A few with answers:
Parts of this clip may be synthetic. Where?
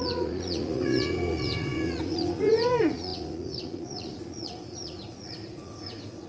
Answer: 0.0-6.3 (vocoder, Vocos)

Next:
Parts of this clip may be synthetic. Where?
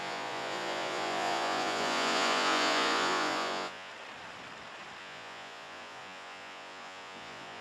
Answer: 0.0-3.9 (vocoder, Vocos); 5.0-7.6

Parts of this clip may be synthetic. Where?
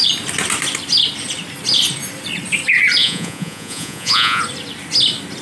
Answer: 3.0-4.4 (vocoder, Vocos)